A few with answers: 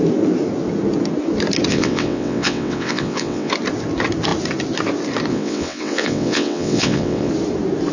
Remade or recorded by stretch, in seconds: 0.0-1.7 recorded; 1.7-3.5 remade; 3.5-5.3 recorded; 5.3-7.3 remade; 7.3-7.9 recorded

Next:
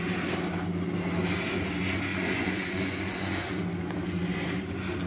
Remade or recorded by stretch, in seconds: 0.0-2.1 recorded; 2.1-3.6 remade; 3.6-5.1 recorded

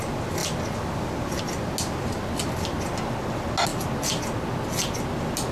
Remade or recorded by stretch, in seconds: 0.0-5.5 recorded

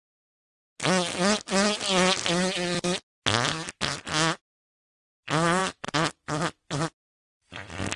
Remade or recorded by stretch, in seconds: 0.0-8.0 recorded

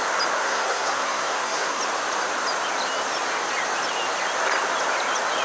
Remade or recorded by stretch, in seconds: 0.0-0.4 recorded; 0.4-1.8 remade; 1.8-5.4 recorded

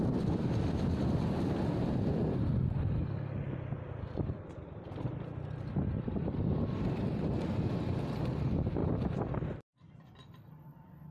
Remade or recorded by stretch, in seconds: 0.0-3.0 remade; 3.0-3.9 recorded; 3.9-8.8 remade; 8.8-9.3 recorded; 9.3-11.1 remade